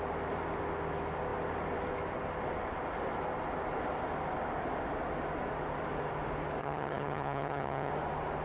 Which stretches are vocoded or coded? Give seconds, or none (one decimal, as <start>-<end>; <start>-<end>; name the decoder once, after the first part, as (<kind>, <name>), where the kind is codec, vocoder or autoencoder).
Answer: 6.6-7.9 (vocoder, HiFi-GAN)